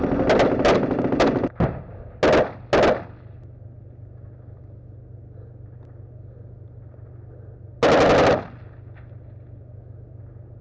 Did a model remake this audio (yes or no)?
no